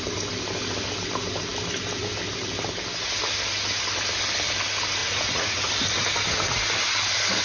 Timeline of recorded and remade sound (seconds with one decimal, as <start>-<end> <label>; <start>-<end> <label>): 0.0-5.0 recorded; 5.0-5.7 remade; 5.7-7.4 recorded